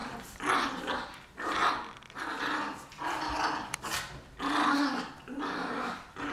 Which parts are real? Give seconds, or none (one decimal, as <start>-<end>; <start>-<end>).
0.0-6.3